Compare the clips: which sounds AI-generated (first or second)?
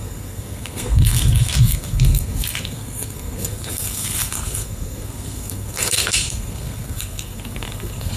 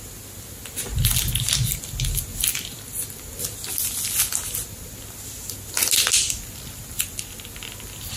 first